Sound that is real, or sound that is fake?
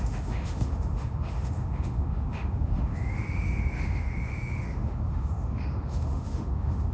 fake